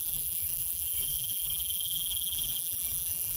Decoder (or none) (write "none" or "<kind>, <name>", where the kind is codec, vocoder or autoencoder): vocoder, BigVGAN v2